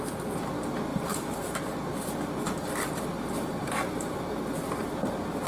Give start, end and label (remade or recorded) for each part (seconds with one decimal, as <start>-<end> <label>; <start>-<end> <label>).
0.0-0.9 recorded; 0.9-4.2 remade; 4.2-5.5 recorded